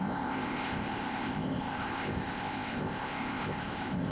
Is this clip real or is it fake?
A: fake